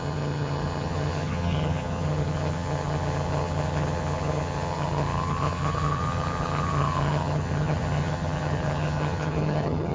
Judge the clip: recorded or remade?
remade